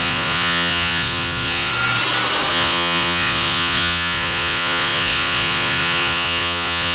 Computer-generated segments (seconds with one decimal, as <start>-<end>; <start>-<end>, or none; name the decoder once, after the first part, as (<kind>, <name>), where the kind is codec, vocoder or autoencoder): 0.0-1.7 (vocoder, Vocos); 2.5-6.9